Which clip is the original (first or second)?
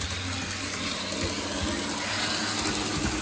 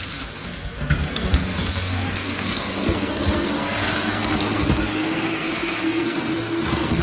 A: first